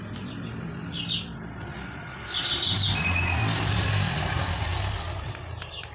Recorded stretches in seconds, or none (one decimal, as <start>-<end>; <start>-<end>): 0.0-5.9